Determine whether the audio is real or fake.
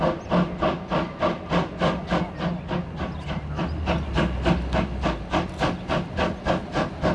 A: real